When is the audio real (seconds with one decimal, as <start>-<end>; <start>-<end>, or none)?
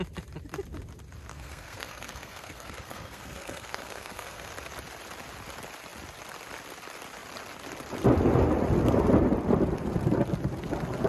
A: 0.0-1.3; 4.5-11.1